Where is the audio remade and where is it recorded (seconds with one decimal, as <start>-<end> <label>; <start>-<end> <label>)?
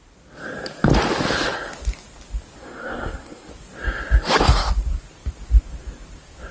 0.0-2.6 recorded; 2.6-3.5 remade; 3.5-6.5 recorded